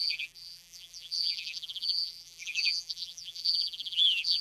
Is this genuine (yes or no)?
no